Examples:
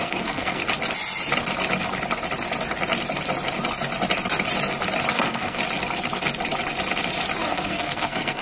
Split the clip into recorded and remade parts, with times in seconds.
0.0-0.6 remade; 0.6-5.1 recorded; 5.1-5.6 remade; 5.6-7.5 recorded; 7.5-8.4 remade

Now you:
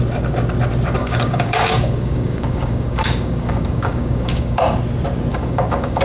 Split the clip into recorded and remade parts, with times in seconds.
0.0-1.0 recorded; 1.0-4.6 remade; 4.6-5.3 recorded; 5.3-6.0 remade

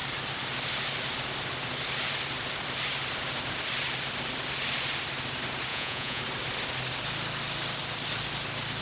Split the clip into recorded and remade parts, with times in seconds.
0.0-5.7 recorded; 5.7-6.2 remade; 6.2-8.8 recorded

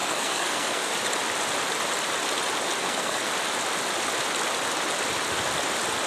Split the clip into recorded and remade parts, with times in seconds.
0.0-0.9 remade; 0.9-2.8 recorded; 2.8-3.3 remade; 3.3-6.1 recorded

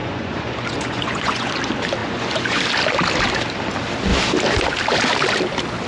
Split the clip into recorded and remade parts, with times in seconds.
0.0-1.5 remade; 1.5-2.0 recorded; 2.0-2.6 remade; 2.6-5.9 recorded